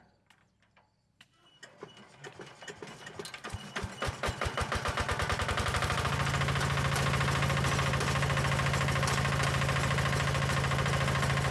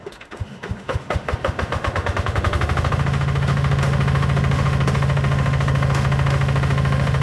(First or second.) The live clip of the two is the first